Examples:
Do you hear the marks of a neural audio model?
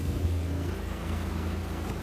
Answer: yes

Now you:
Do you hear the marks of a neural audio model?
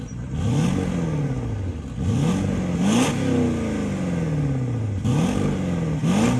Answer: no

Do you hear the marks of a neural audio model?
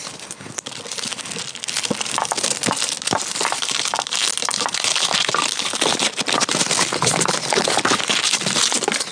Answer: no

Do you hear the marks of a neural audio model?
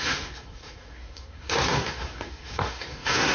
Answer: yes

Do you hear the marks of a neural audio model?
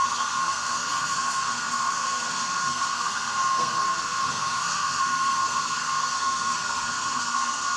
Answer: yes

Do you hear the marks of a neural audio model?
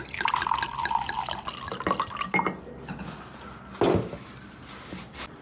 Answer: no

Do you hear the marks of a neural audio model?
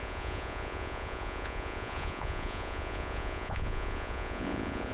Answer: yes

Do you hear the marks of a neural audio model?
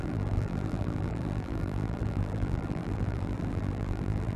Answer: yes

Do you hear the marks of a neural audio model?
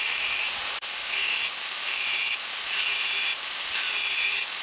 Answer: yes